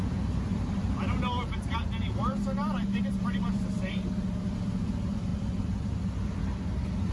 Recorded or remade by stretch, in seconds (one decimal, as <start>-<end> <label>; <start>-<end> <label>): 0.0-0.5 recorded; 0.5-1.2 remade; 1.2-2.6 recorded; 2.6-3.9 remade; 3.9-5.3 recorded; 5.3-5.9 remade; 5.9-7.1 recorded